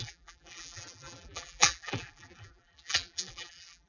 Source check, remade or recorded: remade